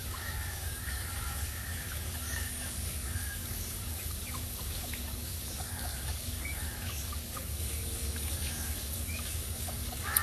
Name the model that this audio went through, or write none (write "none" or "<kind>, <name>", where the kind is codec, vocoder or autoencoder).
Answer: codec, DAC